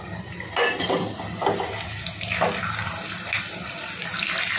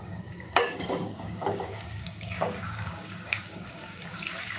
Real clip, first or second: first